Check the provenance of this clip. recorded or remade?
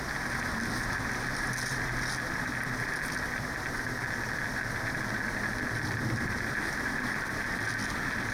recorded